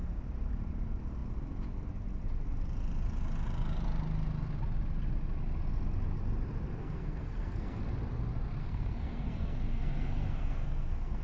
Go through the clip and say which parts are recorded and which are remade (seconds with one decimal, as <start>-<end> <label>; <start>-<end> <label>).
0.0-6.8 recorded; 6.8-7.8 remade; 7.8-8.6 recorded; 8.6-11.2 remade